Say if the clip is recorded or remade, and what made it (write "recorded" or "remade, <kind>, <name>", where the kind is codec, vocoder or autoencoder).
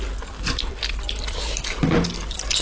recorded